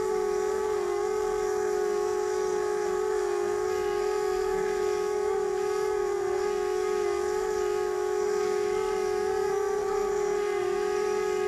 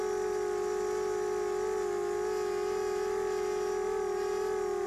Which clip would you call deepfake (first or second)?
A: first